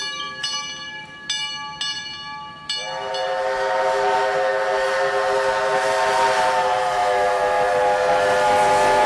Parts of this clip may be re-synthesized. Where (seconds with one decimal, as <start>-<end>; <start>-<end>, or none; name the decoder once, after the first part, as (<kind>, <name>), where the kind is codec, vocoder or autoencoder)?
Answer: none